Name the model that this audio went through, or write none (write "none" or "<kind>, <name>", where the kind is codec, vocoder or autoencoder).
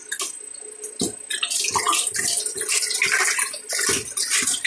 none